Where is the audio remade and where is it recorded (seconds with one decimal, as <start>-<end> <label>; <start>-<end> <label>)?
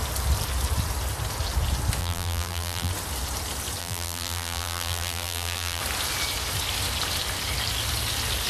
0.0-2.0 recorded; 2.0-2.9 remade; 2.9-3.8 recorded; 3.8-5.8 remade; 5.8-8.5 recorded